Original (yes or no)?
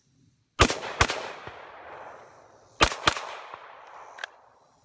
yes